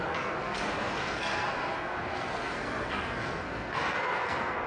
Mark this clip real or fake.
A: fake